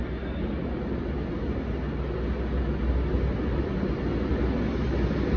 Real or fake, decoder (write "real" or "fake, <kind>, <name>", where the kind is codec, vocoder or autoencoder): real